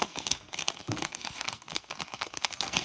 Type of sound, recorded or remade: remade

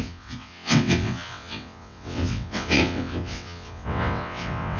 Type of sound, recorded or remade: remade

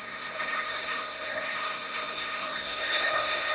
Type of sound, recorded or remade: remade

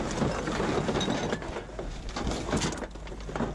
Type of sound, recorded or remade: recorded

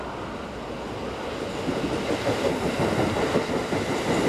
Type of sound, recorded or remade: recorded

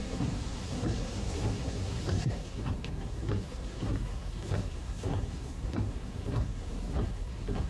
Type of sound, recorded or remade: remade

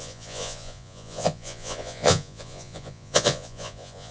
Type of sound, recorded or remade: remade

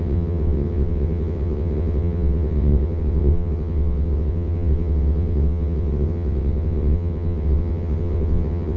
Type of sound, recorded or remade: remade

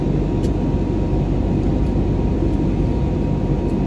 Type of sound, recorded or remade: recorded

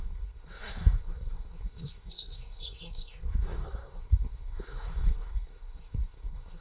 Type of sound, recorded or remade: remade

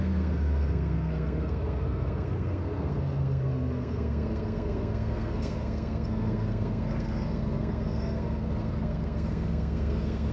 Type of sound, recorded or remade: remade